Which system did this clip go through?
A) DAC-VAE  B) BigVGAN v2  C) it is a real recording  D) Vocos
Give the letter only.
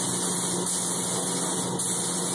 C